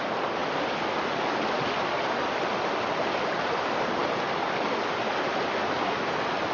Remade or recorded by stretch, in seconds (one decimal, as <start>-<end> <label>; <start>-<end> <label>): 0.0-6.5 recorded

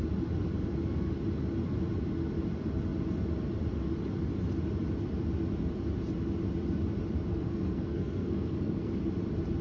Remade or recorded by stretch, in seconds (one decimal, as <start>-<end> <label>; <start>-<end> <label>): 0.0-7.3 recorded; 7.3-9.0 remade; 9.0-9.6 recorded

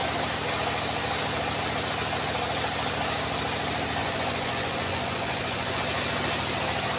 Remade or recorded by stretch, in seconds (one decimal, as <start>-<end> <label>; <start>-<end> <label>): 0.0-4.0 recorded; 4.0-5.8 remade; 5.8-7.0 recorded

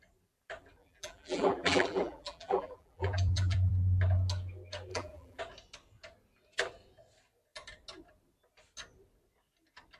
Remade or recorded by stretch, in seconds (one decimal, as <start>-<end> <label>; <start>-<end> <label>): 0.0-0.8 recorded; 0.8-3.7 remade; 3.7-4.9 recorded; 4.9-5.4 remade; 5.4-10.0 recorded

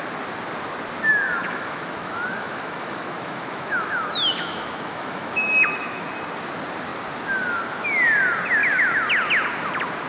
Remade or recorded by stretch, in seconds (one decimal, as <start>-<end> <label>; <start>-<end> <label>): 0.0-1.1 recorded; 1.1-6.1 remade; 6.1-10.1 recorded

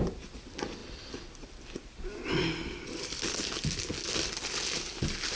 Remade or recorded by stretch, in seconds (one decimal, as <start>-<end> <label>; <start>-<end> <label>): 0.0-5.4 recorded

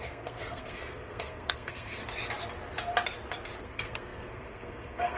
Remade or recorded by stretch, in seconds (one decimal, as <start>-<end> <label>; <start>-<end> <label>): 0.0-2.0 remade; 2.0-3.6 recorded; 3.6-5.2 remade

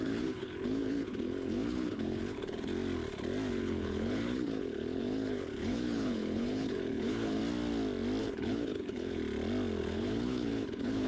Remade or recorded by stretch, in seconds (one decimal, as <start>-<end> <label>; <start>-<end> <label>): 0.0-2.7 remade; 2.7-3.5 recorded; 3.5-7.4 remade; 7.4-8.2 recorded; 8.2-9.2 remade; 9.2-9.8 recorded; 9.8-11.1 remade